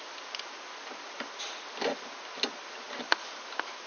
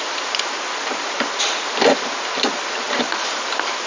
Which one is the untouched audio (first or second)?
first